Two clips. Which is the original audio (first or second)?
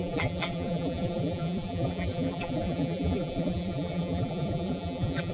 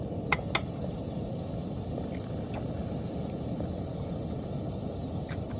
second